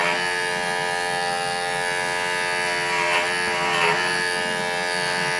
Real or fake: real